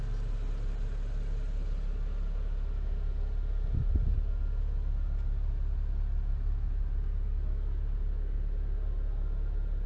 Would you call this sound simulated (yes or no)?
no